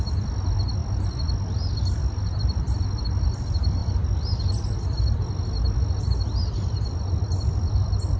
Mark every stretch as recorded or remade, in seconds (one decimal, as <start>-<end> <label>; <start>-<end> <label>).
0.0-8.2 recorded

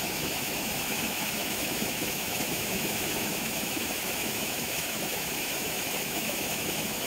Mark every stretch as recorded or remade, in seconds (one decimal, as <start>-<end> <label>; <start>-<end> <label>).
0.0-7.1 remade